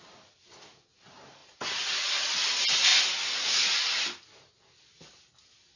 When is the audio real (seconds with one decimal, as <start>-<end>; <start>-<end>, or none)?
0.0-5.8